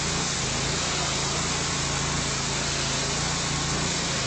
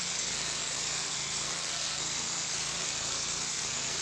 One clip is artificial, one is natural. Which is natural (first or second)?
first